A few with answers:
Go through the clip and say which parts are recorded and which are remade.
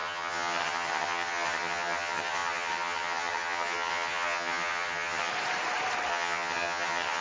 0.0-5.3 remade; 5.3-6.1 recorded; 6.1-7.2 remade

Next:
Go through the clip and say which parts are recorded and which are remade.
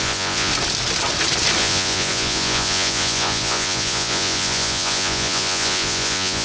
0.0-0.5 remade; 0.5-1.6 recorded; 1.6-6.4 remade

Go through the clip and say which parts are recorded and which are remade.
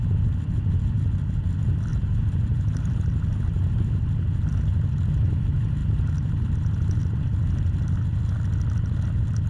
0.0-1.9 recorded; 1.9-3.9 remade; 3.9-5.8 recorded; 5.8-7.2 remade; 7.2-9.5 recorded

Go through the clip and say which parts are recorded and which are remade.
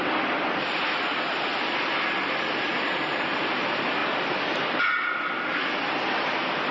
0.0-6.7 recorded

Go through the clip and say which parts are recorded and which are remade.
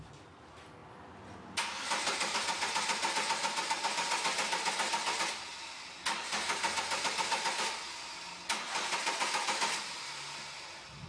0.0-11.1 recorded